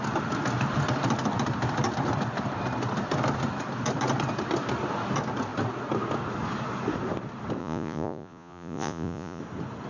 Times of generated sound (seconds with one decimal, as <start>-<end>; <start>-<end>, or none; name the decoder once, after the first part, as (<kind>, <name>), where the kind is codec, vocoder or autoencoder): 7.6-9.4 (vocoder, Vocos)